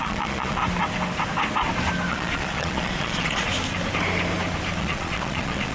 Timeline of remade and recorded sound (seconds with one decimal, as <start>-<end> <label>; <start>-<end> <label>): 0.0-0.6 remade; 0.6-2.1 recorded; 2.1-3.5 remade; 3.5-4.8 recorded; 4.8-5.7 remade